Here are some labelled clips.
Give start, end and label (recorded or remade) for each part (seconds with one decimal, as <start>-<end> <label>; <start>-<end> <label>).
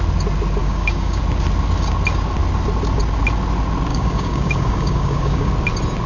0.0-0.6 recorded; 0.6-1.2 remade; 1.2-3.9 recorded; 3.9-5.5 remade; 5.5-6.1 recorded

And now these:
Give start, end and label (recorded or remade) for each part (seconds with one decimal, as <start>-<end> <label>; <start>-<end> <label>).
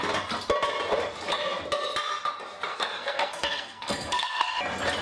0.0-2.7 recorded; 2.7-4.6 remade; 4.6-5.0 recorded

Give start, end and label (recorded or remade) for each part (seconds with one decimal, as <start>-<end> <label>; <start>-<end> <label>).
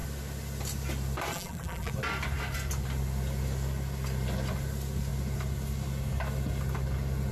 0.0-1.3 recorded; 1.3-1.9 remade; 1.9-7.3 recorded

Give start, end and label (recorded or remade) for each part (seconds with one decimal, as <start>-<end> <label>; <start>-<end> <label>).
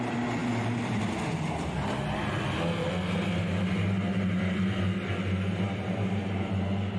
0.0-7.0 recorded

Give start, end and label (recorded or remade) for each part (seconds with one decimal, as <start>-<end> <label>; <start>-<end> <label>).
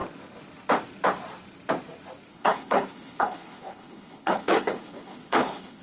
0.0-2.3 recorded; 2.3-5.8 remade